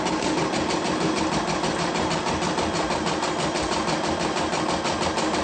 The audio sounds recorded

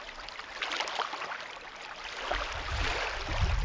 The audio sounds recorded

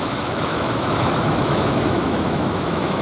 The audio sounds remade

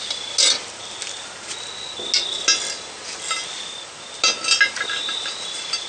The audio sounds recorded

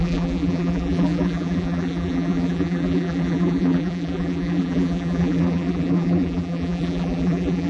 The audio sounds remade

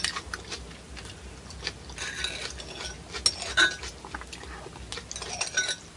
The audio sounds recorded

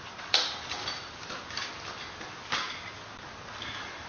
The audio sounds recorded